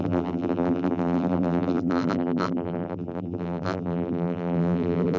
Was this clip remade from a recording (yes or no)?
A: yes